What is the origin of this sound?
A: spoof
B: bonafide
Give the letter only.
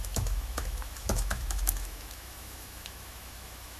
A